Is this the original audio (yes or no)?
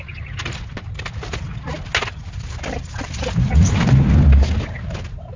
yes